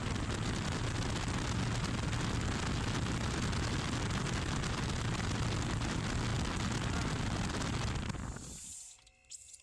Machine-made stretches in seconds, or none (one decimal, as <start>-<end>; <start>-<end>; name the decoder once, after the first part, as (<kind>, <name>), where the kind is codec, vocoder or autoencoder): none